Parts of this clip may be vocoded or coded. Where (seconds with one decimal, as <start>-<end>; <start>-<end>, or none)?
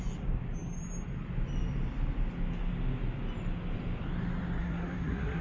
4.6-5.4